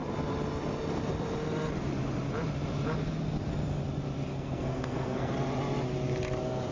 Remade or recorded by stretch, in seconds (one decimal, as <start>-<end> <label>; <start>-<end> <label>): 0.0-4.3 recorded; 4.3-5.3 remade; 5.3-6.7 recorded